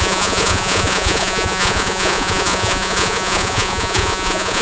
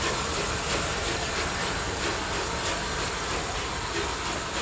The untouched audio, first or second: second